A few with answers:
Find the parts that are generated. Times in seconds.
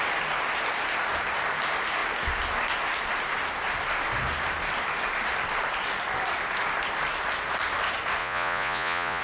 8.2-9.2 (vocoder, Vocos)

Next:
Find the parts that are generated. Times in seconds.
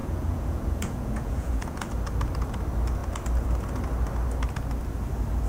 0.0-1.8 (vocoder, Vocos)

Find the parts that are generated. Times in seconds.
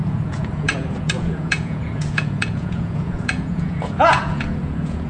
0.0-5.1 (vocoder, Vocos)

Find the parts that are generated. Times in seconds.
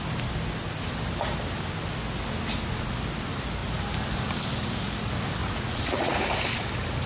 5.4-6.2 (vocoder, Vocos)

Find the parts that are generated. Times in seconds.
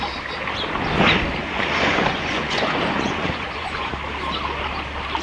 1.4-3.9 (vocoder, Vocos)